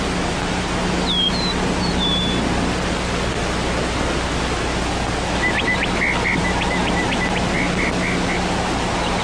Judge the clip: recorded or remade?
recorded